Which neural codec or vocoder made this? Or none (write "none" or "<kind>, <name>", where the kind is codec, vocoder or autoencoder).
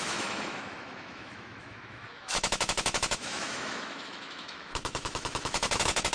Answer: autoencoder, DAC-VAE